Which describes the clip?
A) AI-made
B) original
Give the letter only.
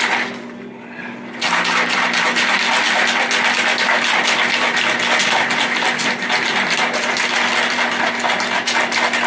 B